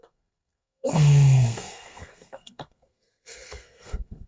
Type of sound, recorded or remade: remade